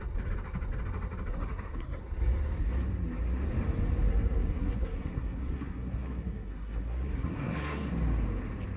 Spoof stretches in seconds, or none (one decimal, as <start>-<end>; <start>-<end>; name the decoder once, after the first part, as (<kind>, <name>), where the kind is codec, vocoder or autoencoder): 1.3-2.0 (codec, SNAC); 4.1-7.9